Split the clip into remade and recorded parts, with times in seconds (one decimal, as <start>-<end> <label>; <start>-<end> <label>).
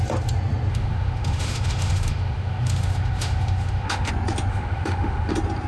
0.0-0.7 recorded; 0.7-4.1 remade; 4.1-4.5 recorded; 4.5-5.3 remade; 5.3-5.7 recorded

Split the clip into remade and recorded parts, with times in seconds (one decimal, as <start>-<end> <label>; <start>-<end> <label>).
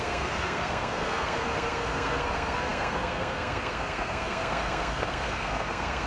0.0-6.1 remade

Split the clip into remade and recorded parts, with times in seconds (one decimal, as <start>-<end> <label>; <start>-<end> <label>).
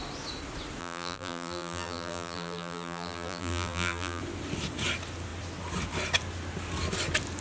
0.0-0.8 recorded; 0.8-4.2 remade; 4.2-7.4 recorded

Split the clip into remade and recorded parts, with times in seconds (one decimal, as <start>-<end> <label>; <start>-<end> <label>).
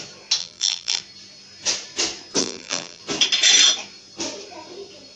0.0-0.4 recorded; 0.4-1.0 remade; 1.0-2.4 recorded; 2.4-3.0 remade; 3.0-5.2 recorded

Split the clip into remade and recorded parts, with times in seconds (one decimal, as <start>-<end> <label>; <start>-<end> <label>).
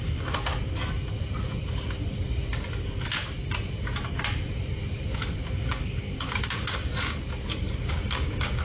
0.0-0.5 remade; 0.5-5.5 recorded; 5.5-6.9 remade; 6.9-7.9 recorded; 7.9-8.6 remade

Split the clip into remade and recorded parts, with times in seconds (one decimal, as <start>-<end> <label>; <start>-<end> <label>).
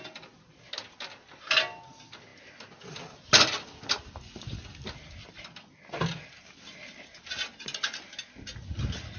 0.0-9.2 recorded